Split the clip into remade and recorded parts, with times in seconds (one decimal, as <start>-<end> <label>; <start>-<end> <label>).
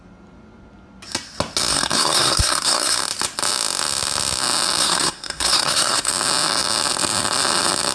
0.0-1.7 recorded; 1.7-3.0 remade; 3.0-4.8 recorded; 4.8-6.1 remade; 6.1-7.9 recorded